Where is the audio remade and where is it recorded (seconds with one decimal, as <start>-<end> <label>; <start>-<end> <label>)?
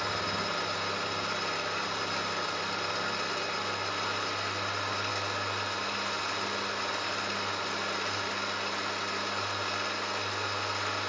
0.0-11.1 recorded